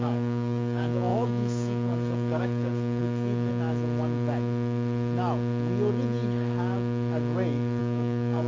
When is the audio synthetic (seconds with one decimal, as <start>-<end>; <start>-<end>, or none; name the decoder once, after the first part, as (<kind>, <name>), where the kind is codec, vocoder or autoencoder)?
0.0-3.5 (codec, DAC); 7.8-8.5